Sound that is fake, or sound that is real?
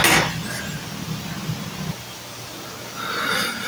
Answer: real